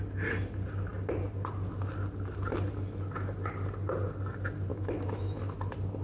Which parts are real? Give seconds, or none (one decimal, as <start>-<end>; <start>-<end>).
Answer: 0.0-4.7; 5.4-6.0